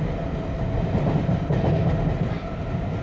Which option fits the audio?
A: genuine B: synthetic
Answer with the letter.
A